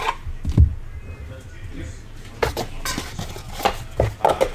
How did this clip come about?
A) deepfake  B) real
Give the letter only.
B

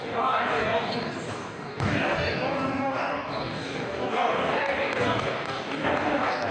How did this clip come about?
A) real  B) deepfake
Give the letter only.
B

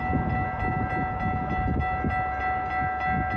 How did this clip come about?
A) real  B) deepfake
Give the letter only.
A